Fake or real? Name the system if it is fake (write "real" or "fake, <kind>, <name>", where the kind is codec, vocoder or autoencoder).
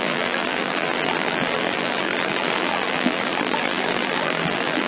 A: fake, vocoder, BigVGAN v2